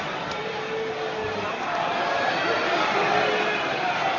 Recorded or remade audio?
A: recorded